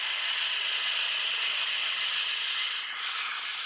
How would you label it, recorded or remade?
recorded